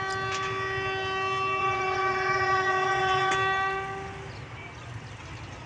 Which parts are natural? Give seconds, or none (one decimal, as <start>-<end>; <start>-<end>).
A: 0.0-1.6; 3.3-5.7